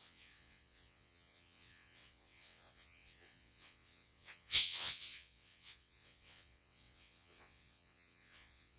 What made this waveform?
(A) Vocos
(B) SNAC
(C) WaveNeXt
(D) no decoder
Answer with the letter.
C